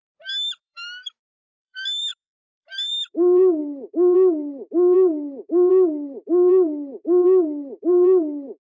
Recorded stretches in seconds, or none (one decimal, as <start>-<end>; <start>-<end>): 0.0-0.5

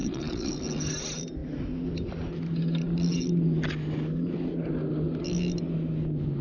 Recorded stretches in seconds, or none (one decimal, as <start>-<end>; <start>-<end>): 0.5-6.4